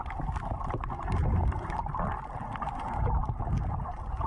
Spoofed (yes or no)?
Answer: no